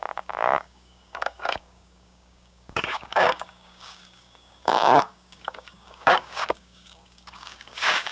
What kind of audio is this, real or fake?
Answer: fake